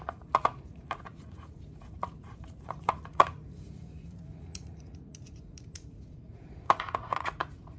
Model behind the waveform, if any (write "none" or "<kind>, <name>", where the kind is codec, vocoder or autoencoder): vocoder, Vocos